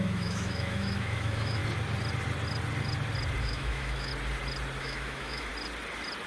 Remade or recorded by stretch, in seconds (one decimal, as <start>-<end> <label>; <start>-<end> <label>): 0.0-1.6 remade; 1.6-3.4 recorded; 3.4-4.1 remade; 4.1-4.8 recorded; 4.8-5.5 remade; 5.5-6.3 recorded